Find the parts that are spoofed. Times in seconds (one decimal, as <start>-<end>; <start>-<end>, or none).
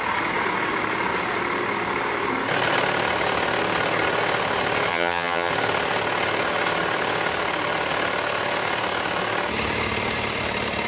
4.9-5.5